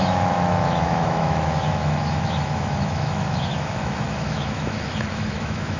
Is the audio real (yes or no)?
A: no